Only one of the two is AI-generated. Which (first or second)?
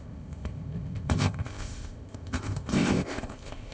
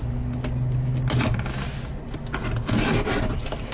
first